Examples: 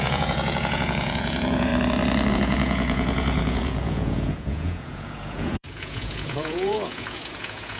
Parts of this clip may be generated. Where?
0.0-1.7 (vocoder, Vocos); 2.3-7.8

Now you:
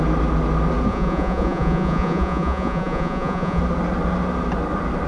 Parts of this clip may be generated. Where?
0.9-3.6 (vocoder, Vocos)

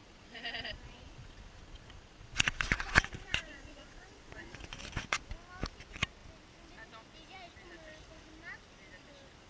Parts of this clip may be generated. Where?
0.0-4.8 (vocoder, Vocos)

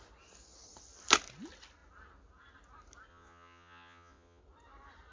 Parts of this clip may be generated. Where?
3.1-4.4 (vocoder, Vocos)